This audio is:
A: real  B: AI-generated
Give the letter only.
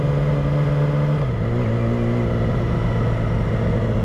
A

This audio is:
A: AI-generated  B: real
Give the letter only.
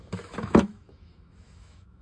A